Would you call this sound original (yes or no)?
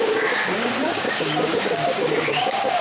no